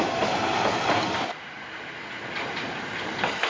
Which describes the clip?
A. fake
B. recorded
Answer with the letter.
B